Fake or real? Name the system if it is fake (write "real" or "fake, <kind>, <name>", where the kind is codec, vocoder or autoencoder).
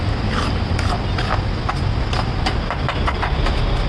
fake, vocoder, BigVGAN v2